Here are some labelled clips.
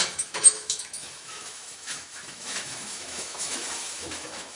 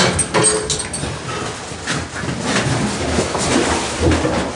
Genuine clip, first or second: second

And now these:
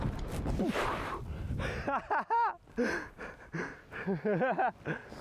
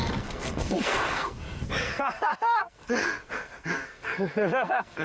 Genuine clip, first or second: first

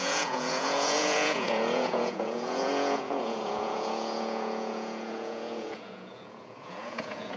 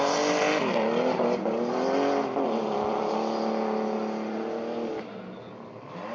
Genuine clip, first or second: second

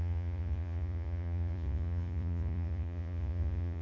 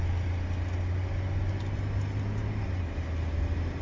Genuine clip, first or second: second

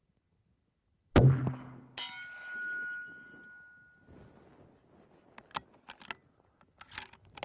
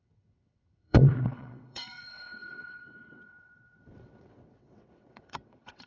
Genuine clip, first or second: first